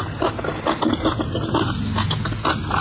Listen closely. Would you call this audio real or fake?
real